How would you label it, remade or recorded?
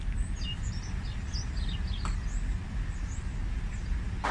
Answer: recorded